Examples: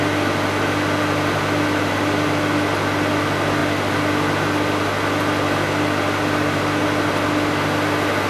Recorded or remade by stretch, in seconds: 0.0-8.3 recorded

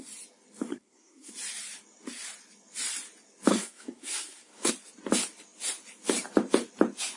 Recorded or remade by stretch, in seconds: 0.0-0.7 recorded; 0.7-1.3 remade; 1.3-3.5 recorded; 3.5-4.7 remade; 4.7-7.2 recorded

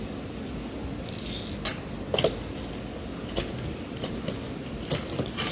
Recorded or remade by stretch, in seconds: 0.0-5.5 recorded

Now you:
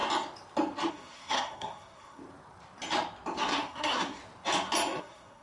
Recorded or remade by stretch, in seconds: 0.0-0.9 recorded; 0.9-2.2 remade; 2.2-3.4 recorded; 3.4-4.2 remade; 4.2-5.0 recorded; 5.0-5.4 remade